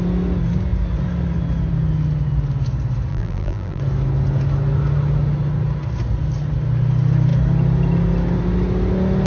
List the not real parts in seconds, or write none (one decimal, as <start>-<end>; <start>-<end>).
3.1-3.8